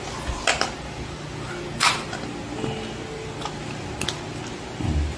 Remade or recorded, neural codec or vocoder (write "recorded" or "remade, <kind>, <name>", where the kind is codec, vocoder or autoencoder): recorded